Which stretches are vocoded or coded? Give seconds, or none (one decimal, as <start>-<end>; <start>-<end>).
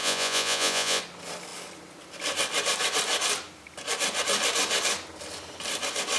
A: 0.0-1.0